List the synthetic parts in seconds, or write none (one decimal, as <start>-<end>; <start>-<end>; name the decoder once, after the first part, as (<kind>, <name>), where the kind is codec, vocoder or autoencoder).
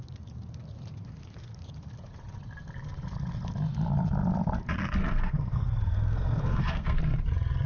5.0-7.0 (codec, SNAC)